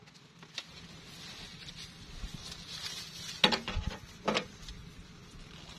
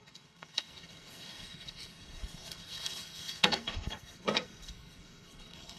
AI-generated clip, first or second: second